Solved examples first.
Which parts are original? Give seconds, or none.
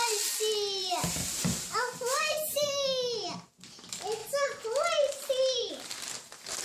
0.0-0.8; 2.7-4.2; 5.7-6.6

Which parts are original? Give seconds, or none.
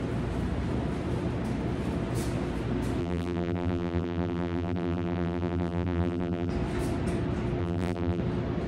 0.0-3.0; 6.5-7.6; 8.2-8.7